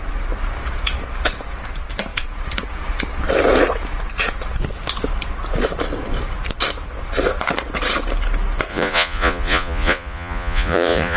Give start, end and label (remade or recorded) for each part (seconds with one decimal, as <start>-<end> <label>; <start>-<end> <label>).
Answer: 0.0-8.7 recorded; 8.7-11.2 remade